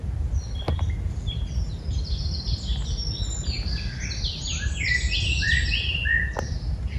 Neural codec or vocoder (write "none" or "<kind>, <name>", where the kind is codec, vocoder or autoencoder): none